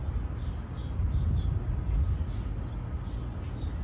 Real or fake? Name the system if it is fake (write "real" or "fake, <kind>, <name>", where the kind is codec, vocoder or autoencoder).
real